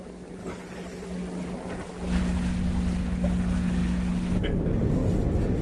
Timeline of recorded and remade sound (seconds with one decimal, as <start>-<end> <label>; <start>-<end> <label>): 0.0-5.6 recorded

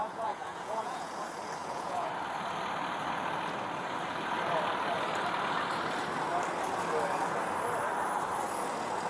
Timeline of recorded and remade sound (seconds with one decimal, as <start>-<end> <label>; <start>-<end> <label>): 0.0-1.1 remade; 1.1-1.6 recorded; 1.6-2.1 remade; 2.1-9.1 recorded

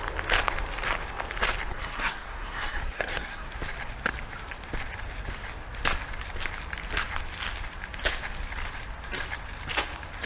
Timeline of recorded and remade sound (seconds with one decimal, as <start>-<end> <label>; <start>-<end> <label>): 0.0-1.7 recorded; 1.7-3.5 remade; 3.5-10.3 recorded

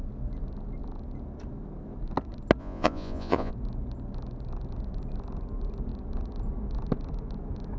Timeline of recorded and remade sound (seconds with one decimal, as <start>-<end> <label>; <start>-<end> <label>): 0.0-2.6 recorded; 2.6-3.5 remade; 3.5-7.8 recorded

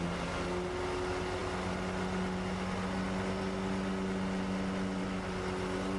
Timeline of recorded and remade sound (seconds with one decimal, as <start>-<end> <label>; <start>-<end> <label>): 0.0-6.0 recorded

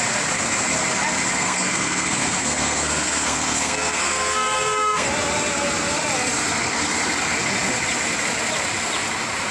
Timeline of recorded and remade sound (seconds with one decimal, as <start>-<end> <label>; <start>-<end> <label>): 0.0-1.3 recorded; 1.3-5.1 remade; 5.1-9.5 recorded

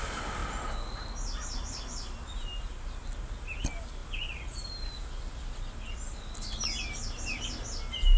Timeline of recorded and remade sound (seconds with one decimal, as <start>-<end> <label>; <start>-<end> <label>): 0.0-8.2 recorded